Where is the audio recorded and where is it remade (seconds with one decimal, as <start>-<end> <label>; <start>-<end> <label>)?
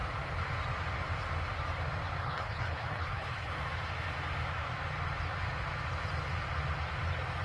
0.0-2.2 recorded; 2.2-3.5 remade; 3.5-7.4 recorded